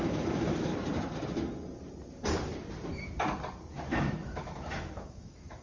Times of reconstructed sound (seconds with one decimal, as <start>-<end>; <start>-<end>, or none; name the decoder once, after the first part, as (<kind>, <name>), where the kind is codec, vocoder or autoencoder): 0.0-0.7 (autoencoder, DAC-VAE); 3.7-5.6